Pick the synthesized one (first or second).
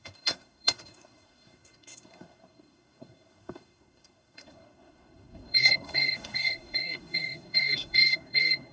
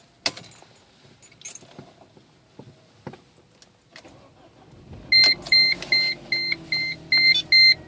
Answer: first